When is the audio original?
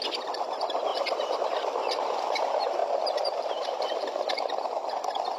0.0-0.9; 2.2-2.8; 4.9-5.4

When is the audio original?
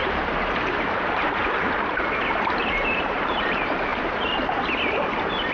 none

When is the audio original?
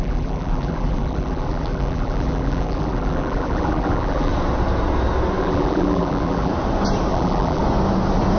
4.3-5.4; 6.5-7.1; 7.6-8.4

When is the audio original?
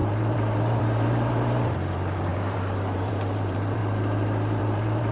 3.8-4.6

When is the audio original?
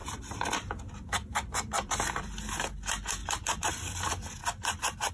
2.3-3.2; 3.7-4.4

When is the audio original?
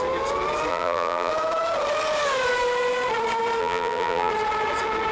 0.0-0.7; 1.3-3.6; 4.3-5.1